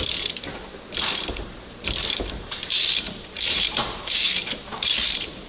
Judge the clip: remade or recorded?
remade